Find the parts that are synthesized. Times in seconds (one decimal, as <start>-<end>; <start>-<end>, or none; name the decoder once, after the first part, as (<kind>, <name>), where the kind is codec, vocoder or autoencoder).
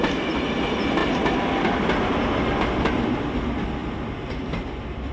none